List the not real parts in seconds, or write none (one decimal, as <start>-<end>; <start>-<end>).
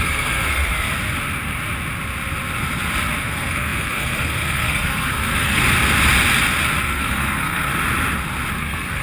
0.0-0.7; 3.2-5.6; 6.8-7.7; 8.5-9.0